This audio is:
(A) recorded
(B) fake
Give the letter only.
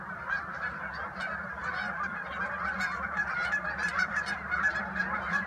B